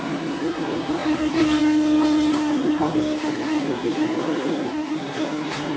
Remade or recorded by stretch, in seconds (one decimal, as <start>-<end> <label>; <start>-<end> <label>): 0.0-5.8 remade